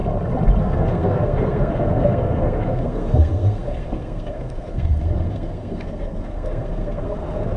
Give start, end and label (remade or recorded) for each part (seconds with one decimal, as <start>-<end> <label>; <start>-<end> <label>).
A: 0.0-0.6 recorded; 0.6-7.6 remade